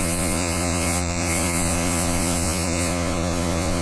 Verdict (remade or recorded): remade